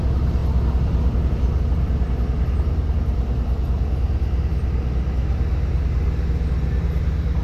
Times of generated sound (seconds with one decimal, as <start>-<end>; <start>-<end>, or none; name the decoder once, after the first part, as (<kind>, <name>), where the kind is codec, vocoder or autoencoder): 0.4-1.6 (vocoder, BigVGAN v2)